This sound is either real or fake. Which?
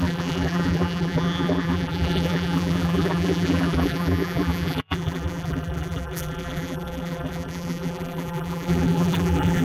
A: fake